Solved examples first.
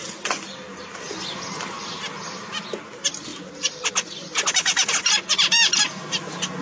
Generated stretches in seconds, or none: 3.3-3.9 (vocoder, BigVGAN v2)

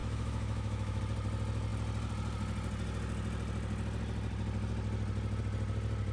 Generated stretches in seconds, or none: 0.0-1.0 (autoencoder, DAC-VAE)

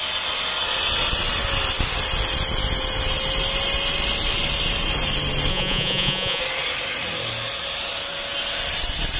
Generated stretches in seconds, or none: 5.5-6.4 (vocoder, Vocos)